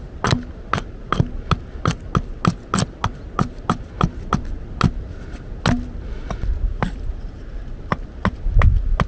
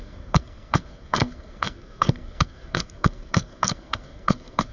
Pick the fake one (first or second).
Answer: second